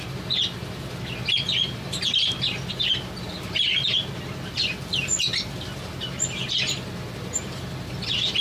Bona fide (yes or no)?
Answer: yes